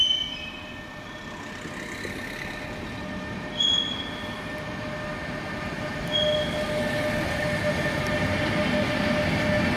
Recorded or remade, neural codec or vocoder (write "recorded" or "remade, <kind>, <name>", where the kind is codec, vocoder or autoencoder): recorded